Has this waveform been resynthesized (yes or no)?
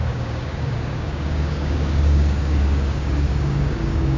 yes